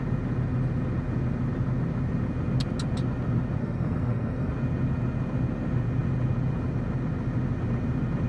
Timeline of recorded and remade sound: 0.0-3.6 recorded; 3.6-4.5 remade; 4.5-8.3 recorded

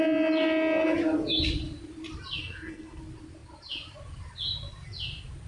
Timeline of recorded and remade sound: 0.0-2.4 recorded; 2.4-3.0 remade; 3.0-5.5 recorded

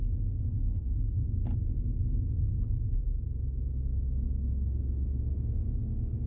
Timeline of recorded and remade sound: 0.0-0.5 recorded; 0.5-1.2 remade; 1.2-6.3 recorded

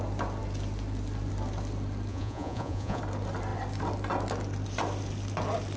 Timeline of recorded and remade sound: 0.0-2.1 recorded; 2.1-3.0 remade; 3.0-5.8 recorded

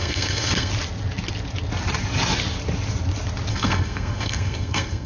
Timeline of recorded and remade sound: 0.0-0.7 remade; 0.7-3.5 recorded; 3.5-5.1 remade

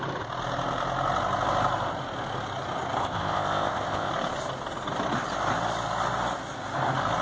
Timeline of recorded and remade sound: 0.0-3.0 recorded; 3.0-4.1 remade; 4.1-7.2 recorded

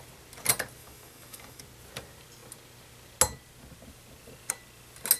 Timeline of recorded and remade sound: 0.0-0.8 recorded; 0.8-1.6 remade; 1.6-5.2 recorded

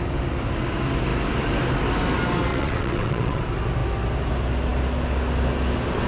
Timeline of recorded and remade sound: 0.0-2.5 recorded; 2.5-3.4 remade; 3.4-6.1 recorded